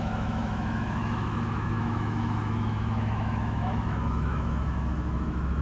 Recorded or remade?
remade